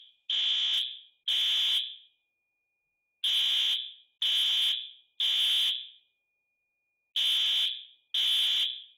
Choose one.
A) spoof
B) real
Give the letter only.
B